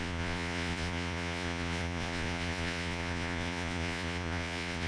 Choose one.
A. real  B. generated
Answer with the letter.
B